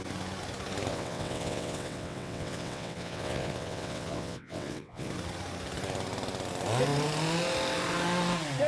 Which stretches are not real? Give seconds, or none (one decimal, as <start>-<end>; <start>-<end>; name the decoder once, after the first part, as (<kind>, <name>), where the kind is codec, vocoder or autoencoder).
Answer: 0.9-5.1 (vocoder, WaveNeXt)